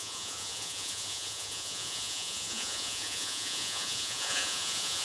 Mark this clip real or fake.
fake